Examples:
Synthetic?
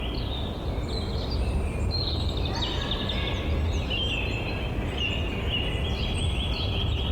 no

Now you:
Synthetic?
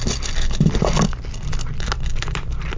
no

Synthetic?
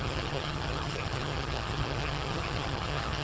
yes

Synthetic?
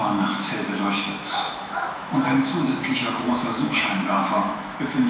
yes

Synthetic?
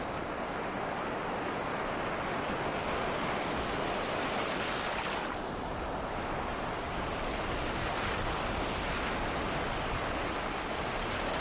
no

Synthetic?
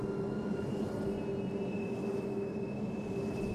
no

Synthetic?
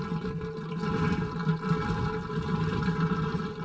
no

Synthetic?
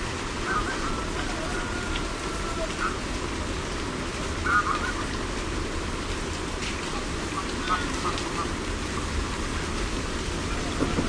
no